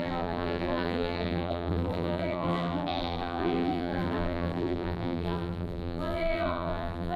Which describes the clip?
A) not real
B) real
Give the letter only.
A